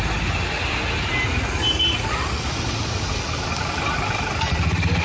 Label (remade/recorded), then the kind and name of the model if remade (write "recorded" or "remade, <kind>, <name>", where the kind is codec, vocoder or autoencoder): recorded